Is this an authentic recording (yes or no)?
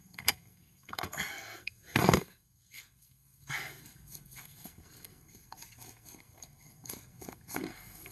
no